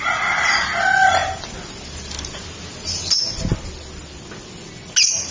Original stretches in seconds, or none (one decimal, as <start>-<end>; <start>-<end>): 0.0-5.3